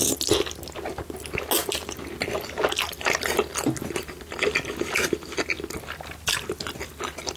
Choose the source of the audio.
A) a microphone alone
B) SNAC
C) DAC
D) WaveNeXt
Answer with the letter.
A